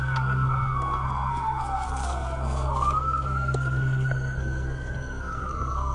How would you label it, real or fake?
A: fake